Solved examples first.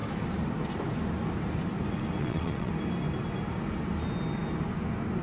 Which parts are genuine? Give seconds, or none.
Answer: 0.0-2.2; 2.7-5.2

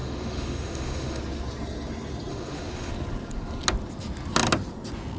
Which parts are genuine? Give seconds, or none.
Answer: 1.2-2.3; 2.9-5.2

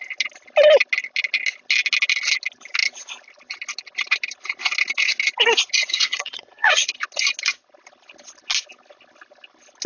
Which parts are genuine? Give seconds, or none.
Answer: 0.0-5.8; 6.9-9.9

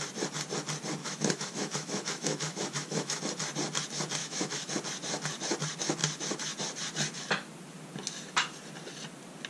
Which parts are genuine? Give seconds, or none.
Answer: 0.0-1.0; 3.2-4.2; 4.7-9.5

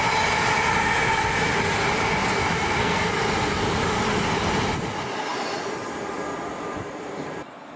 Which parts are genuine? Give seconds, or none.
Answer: 0.0-2.4; 3.1-7.8

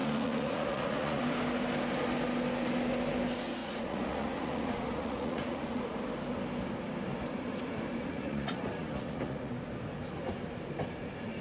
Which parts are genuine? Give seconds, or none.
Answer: 1.2-3.6; 5.8-8.0; 9.5-11.4